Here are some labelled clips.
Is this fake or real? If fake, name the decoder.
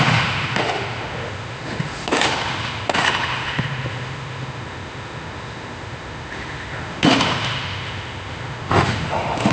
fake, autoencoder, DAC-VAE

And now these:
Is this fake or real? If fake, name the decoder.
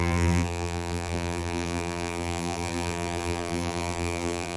fake, vocoder, BigVGAN v2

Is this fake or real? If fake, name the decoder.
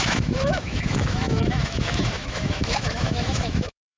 fake, autoencoder, DAC-VAE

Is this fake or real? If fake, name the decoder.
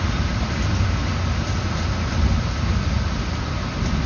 real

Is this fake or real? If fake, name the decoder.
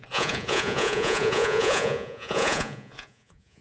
fake, vocoder, Vocos